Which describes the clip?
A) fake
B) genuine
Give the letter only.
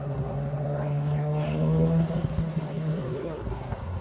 A